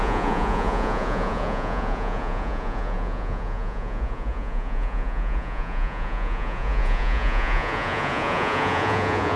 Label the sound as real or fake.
fake